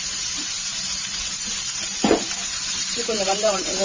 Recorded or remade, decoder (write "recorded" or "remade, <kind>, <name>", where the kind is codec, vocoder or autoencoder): remade, vocoder, BigVGAN v2